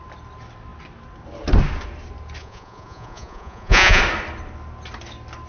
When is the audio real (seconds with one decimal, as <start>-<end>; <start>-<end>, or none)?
0.0-2.4; 4.0-5.5